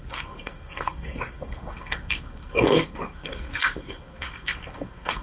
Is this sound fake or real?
fake